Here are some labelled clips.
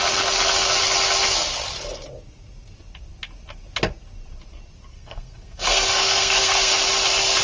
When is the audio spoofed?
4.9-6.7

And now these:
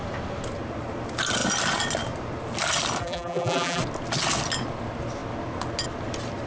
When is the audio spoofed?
3.0-3.8

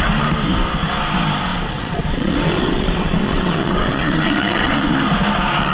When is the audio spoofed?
1.5-4.9

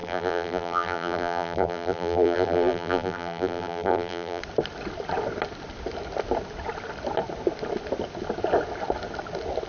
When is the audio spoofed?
0.0-4.4

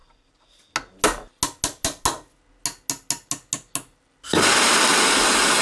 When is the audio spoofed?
none

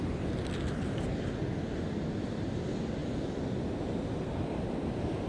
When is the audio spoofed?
none